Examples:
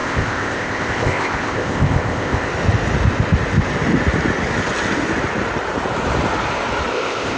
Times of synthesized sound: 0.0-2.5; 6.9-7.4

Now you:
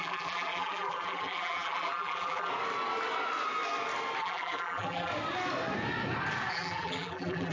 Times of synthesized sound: 0.0-2.5; 4.2-5.1; 6.5-7.5